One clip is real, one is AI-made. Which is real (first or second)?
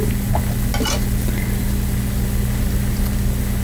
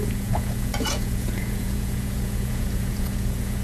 first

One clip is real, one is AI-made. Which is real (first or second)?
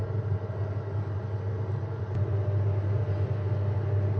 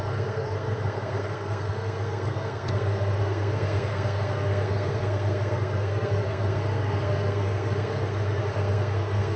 first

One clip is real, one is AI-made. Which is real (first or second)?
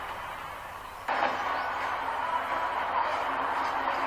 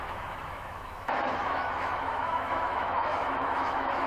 first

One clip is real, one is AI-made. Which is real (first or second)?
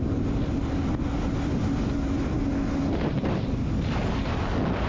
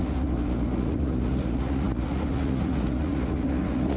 first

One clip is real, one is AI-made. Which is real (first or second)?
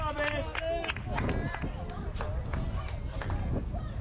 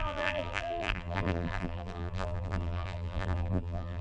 first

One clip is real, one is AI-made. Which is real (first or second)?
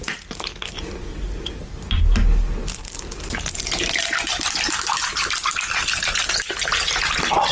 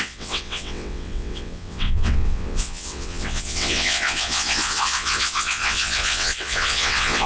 first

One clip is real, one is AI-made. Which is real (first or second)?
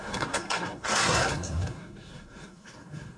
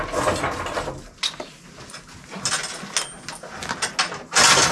second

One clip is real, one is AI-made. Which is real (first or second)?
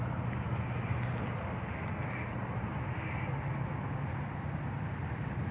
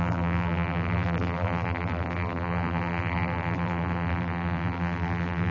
first